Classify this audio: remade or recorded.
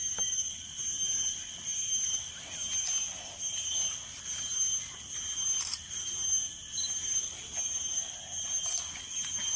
recorded